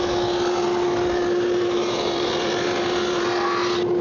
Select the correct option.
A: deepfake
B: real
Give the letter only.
B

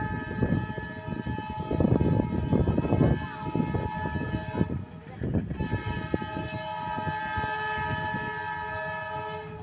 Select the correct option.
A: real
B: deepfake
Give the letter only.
A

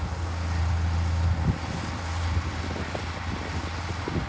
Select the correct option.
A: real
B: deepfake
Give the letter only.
A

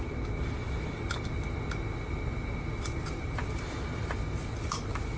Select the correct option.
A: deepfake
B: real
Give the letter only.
B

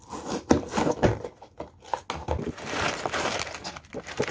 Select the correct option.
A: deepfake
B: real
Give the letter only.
B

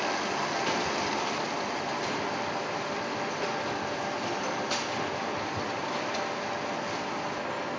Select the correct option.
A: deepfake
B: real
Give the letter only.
B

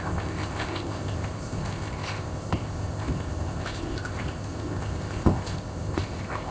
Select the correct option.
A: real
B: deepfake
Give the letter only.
B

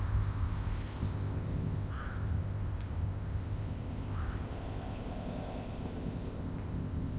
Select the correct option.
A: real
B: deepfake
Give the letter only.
B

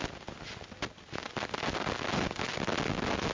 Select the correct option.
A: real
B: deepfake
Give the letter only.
A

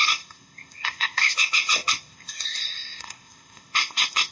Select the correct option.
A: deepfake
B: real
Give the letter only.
A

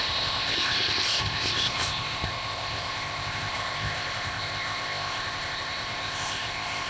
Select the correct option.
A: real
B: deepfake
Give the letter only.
B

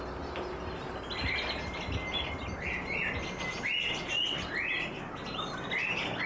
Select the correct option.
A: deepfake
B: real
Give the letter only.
B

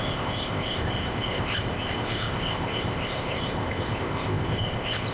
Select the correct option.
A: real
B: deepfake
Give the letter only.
B